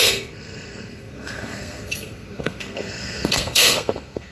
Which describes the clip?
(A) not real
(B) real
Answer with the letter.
A